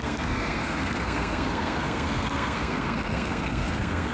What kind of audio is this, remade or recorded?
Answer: remade